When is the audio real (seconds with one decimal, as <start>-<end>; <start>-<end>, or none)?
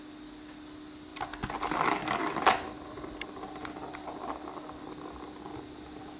0.0-6.2